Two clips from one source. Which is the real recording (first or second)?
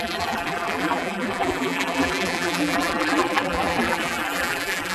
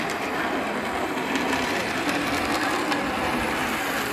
second